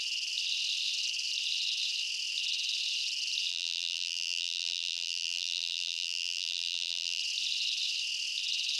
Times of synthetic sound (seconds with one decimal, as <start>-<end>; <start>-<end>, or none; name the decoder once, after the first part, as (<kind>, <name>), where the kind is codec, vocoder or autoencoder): 3.5-7.2 (vocoder, BigVGAN v2)